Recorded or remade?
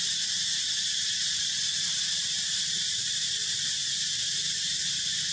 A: remade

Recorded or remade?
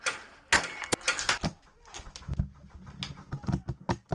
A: recorded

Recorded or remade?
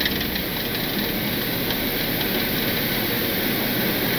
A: recorded